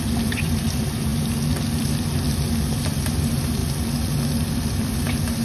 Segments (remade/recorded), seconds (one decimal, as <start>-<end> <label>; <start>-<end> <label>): 0.0-1.1 remade; 1.1-2.7 recorded; 2.7-3.6 remade; 3.6-4.5 recorded; 4.5-5.4 remade